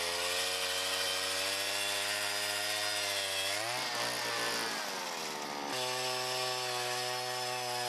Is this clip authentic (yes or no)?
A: yes